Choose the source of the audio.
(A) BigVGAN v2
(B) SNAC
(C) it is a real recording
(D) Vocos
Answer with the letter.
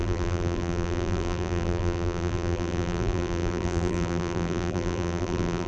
A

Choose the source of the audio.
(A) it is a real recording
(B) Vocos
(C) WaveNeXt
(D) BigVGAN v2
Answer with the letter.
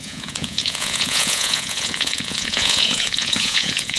B